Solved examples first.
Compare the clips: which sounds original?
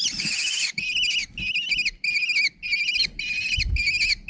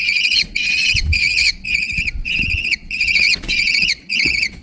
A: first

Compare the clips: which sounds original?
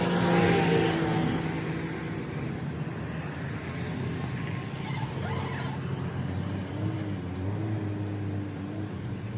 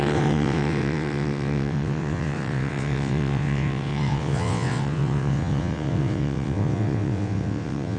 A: first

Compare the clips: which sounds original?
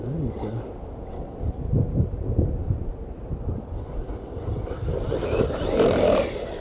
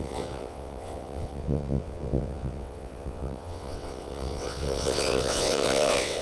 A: first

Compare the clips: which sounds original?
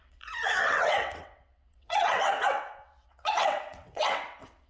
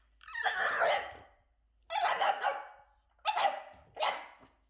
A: second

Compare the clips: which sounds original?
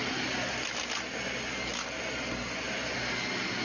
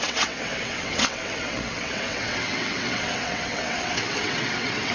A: first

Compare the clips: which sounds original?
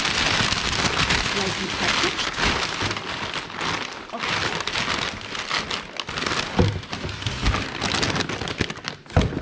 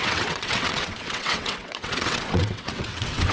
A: first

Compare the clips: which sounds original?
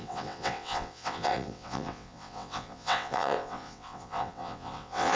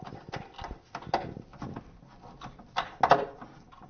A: second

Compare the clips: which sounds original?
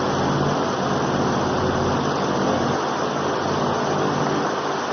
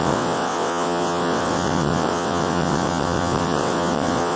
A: first